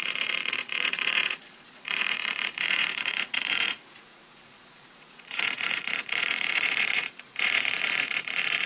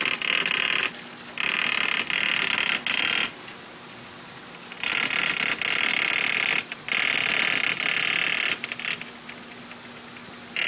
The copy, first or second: first